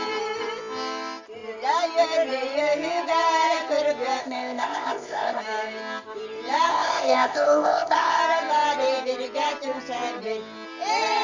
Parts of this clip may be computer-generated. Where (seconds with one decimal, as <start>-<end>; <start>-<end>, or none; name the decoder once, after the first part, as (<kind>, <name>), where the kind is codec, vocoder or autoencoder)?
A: 4.2-5.4 (codec, ZipCodec); 6.7-8.2